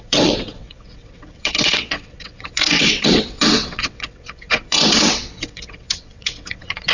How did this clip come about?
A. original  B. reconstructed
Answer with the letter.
B